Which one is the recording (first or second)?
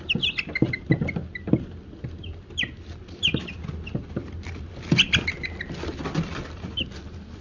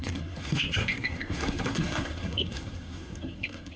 first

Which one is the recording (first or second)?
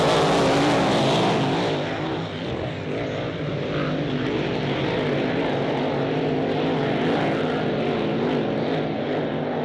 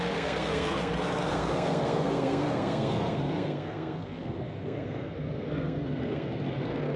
first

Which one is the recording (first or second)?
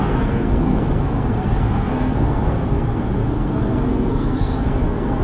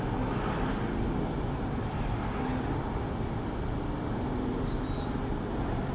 second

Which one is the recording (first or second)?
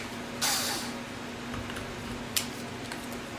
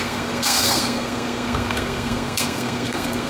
first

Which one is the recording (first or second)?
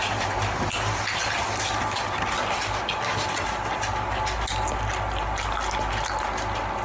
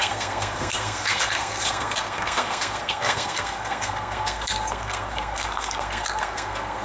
first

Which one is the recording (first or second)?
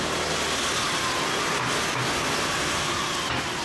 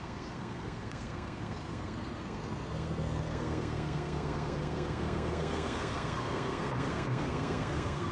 first